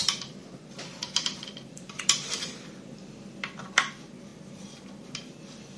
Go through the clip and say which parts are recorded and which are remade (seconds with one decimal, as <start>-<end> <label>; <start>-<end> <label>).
0.0-4.3 remade; 4.3-5.2 recorded; 5.2-5.8 remade